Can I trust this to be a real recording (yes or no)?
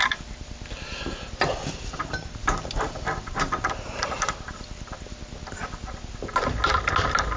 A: yes